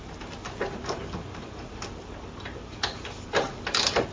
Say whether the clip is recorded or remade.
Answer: recorded